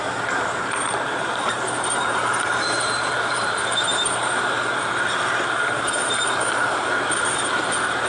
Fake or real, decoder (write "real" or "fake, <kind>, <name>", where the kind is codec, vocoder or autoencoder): fake, vocoder, BigVGAN v2